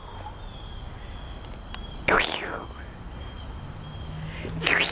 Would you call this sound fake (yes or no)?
no